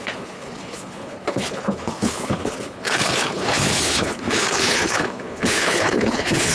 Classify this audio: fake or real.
fake